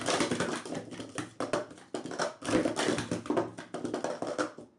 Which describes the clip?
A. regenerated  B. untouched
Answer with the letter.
B